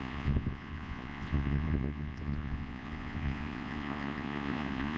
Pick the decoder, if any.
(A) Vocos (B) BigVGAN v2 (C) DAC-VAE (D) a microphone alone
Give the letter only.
A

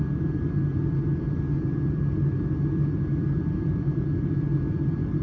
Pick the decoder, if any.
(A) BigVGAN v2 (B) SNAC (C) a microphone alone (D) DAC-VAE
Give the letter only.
C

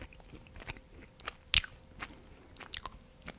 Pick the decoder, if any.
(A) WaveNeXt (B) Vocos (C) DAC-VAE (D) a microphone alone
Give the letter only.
D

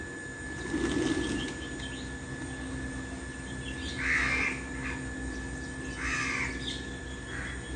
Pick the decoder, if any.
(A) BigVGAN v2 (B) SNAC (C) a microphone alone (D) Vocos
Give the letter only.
C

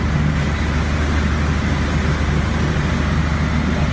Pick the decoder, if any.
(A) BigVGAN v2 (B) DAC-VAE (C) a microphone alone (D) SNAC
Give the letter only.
C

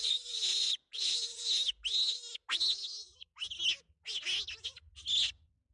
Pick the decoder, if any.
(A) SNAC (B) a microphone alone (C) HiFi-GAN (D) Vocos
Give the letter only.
B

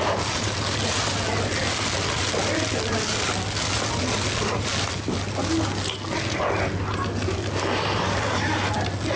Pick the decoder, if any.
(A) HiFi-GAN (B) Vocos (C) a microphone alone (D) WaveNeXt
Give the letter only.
C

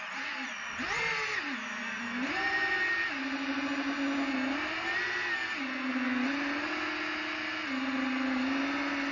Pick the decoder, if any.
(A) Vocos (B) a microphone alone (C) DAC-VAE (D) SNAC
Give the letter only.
B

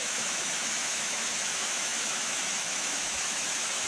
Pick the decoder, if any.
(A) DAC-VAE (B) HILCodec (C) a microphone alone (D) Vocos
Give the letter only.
A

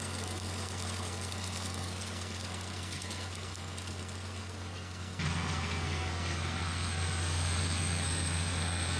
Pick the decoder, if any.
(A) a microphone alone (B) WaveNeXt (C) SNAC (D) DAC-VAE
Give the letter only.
C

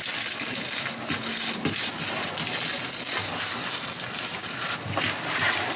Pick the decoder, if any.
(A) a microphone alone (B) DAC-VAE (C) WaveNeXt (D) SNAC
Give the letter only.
A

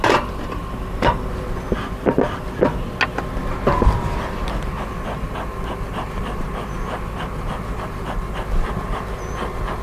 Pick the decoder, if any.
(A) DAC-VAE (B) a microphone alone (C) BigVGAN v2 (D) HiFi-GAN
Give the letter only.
B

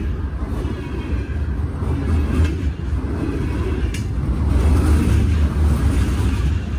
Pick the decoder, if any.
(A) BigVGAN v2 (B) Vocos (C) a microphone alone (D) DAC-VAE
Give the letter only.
C